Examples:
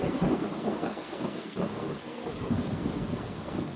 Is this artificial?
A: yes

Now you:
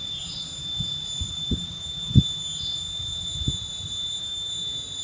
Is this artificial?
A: no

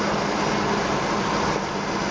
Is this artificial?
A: no